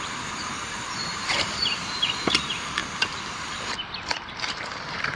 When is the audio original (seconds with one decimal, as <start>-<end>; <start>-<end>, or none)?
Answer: 2.8-4.3